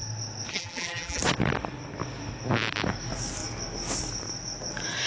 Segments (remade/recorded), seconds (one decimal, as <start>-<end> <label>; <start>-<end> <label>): 0.0-0.5 recorded; 0.5-1.2 remade; 1.2-5.1 recorded